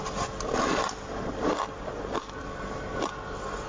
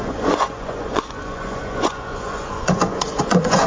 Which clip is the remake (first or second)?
second